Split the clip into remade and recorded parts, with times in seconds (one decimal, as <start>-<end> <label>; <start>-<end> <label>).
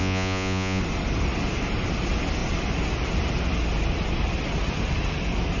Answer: 0.0-0.8 remade; 0.8-5.6 recorded